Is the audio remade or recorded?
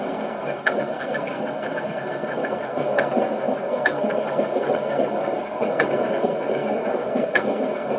remade